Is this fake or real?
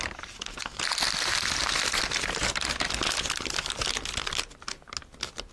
real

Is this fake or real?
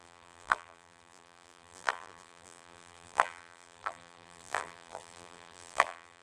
fake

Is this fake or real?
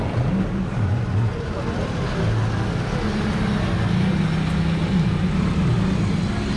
real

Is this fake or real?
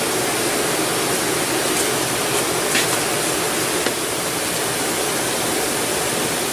real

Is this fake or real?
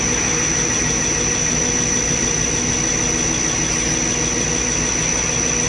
real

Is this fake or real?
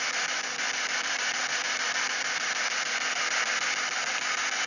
real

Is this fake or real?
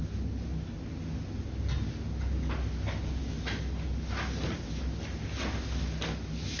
real